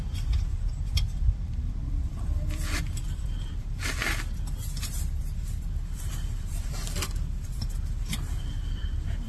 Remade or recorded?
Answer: remade